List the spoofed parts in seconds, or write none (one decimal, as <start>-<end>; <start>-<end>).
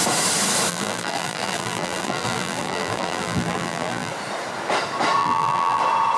0.7-4.1; 5.2-5.8